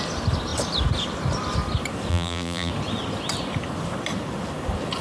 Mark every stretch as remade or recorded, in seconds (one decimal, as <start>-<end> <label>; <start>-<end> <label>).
0.0-2.1 recorded; 2.1-2.7 remade; 2.7-5.0 recorded

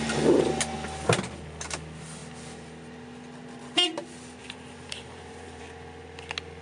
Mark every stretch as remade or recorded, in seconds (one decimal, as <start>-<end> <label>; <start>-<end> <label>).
0.0-4.4 recorded; 4.4-5.6 remade; 5.6-6.6 recorded

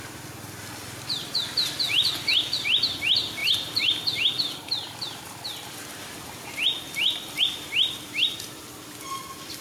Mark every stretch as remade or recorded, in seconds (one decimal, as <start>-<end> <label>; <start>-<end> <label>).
0.0-3.4 recorded; 3.4-7.4 remade; 7.4-9.6 recorded

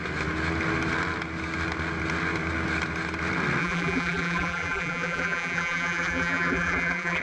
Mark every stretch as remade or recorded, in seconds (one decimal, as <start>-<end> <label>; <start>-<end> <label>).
0.0-3.6 recorded; 3.6-7.2 remade

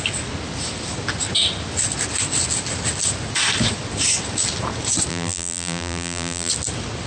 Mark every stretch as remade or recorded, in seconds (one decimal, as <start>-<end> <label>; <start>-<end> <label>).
0.0-5.1 recorded; 5.1-6.5 remade; 6.5-7.1 recorded

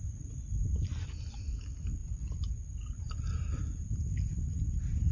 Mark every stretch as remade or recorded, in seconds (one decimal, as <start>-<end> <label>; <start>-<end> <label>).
0.0-5.1 recorded

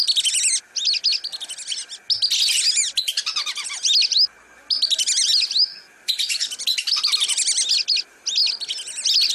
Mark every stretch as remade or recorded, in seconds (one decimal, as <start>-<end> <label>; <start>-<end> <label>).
0.0-9.3 recorded